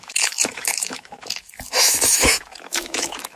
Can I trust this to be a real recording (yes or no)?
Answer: no